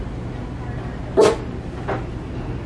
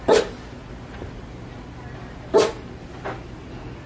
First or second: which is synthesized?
second